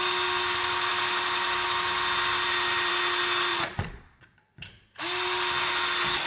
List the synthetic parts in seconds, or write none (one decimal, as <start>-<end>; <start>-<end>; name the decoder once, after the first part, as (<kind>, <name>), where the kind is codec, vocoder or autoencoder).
3.5-5.0 (vocoder, Vocos)